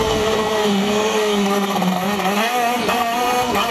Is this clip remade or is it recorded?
remade